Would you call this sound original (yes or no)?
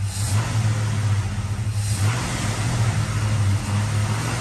yes